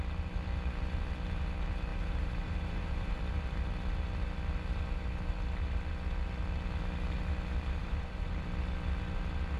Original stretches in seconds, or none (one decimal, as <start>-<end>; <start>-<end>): 0.0-1.9; 3.2-7.8; 8.4-9.6

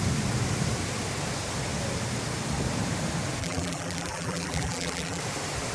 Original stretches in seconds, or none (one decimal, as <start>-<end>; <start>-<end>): 0.0-3.4; 5.2-5.7

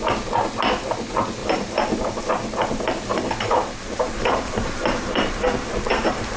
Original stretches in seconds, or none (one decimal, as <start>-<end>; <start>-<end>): 0.0-1.4; 2.2-3.1

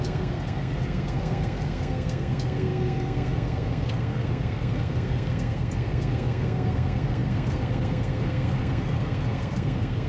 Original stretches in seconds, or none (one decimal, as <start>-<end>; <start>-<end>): none

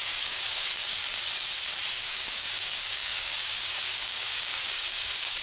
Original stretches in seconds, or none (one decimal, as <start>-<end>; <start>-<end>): 1.0-1.9